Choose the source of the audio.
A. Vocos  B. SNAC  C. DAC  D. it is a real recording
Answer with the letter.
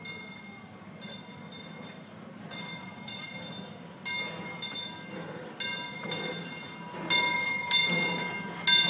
D